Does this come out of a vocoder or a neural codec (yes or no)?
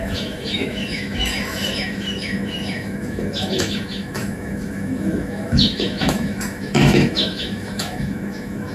yes